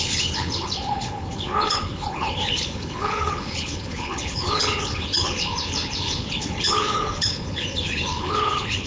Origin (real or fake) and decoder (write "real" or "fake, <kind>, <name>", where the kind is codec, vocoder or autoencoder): fake, codec, HILCodec